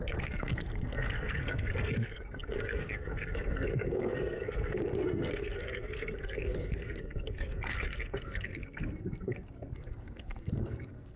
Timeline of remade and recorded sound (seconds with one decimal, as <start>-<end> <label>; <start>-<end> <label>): 0.0-11.2 remade